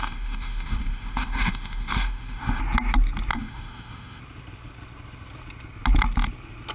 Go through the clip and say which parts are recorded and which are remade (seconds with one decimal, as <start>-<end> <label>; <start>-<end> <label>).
0.0-2.6 remade; 2.6-3.3 recorded; 3.3-4.2 remade; 4.2-6.7 recorded